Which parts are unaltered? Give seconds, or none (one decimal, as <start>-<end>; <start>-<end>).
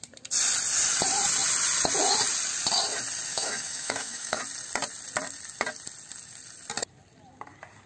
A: 0.0-3.3; 4.4-7.9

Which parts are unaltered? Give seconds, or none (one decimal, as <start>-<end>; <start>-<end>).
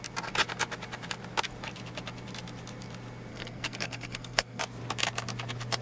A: 0.0-3.3; 4.6-5.8